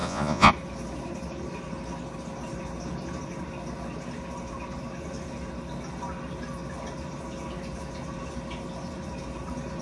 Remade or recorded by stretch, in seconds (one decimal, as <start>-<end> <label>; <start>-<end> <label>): 0.0-0.5 remade; 0.5-9.8 recorded

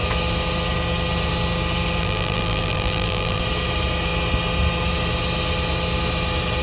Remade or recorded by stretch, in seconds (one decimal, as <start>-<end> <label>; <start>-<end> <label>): 0.0-2.0 recorded; 2.0-3.4 remade; 3.4-6.6 recorded

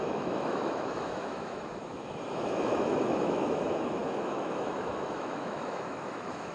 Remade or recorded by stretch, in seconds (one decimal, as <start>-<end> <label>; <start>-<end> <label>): 0.0-6.5 remade

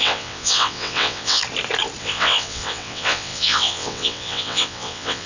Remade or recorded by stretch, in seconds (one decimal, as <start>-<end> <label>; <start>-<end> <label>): 0.0-1.4 remade; 1.4-2.0 recorded; 2.0-5.3 remade

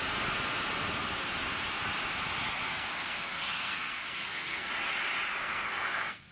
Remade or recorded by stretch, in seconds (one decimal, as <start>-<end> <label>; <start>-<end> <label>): 0.0-2.7 recorded; 2.7-4.7 remade; 4.7-5.4 recorded; 5.4-6.3 remade

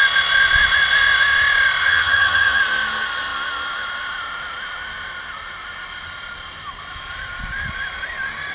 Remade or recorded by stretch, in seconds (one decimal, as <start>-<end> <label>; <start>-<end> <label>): 0.0-1.8 recorded; 1.8-2.6 remade; 2.6-8.5 recorded

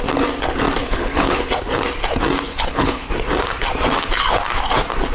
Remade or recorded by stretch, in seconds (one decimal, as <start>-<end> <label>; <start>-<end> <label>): 0.0-0.8 recorded; 0.8-1.5 remade; 1.5-2.5 recorded; 2.5-3.1 remade; 3.1-5.1 recorded